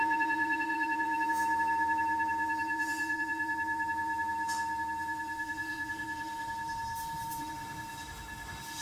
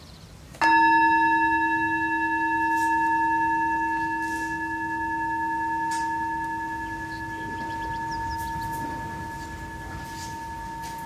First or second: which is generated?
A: first